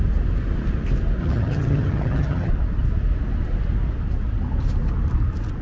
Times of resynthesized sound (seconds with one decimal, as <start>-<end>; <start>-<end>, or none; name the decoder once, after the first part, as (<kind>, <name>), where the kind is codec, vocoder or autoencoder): 1.2-2.5 (vocoder, HiFi-GAN)